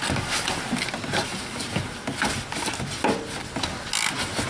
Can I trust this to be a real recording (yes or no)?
yes